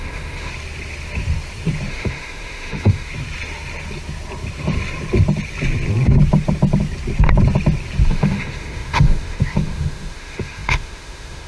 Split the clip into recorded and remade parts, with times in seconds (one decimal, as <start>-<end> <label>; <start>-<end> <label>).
0.0-0.5 remade; 0.5-1.9 recorded; 1.9-3.1 remade; 3.1-8.1 recorded; 8.1-11.5 remade